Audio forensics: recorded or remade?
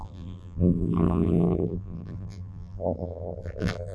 remade